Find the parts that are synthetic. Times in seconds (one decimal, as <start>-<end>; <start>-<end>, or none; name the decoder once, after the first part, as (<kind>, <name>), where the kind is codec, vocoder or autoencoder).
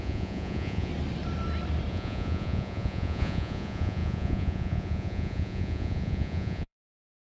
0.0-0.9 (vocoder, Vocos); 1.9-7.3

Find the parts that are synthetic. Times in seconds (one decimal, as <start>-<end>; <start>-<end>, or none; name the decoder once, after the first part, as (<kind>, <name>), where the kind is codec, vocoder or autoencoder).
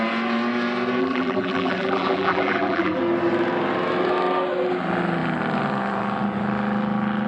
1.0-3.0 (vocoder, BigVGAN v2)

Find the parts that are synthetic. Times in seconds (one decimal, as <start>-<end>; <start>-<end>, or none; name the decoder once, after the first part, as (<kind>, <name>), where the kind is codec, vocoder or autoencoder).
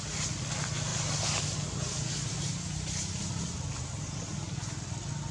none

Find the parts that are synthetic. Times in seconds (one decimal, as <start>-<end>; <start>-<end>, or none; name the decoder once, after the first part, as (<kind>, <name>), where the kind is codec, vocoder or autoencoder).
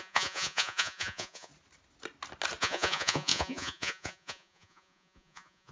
0.0-1.5 (vocoder, Vocos); 2.6-5.7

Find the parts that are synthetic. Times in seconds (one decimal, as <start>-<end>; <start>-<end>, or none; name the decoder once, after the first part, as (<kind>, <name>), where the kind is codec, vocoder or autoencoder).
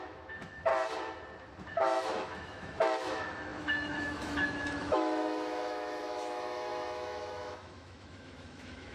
0.0-0.7 (autoencoder, DAC-VAE); 1.7-8.9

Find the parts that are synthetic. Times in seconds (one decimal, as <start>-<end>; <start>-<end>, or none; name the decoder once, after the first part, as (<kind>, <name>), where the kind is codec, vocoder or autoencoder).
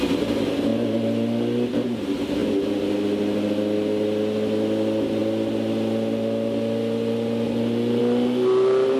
none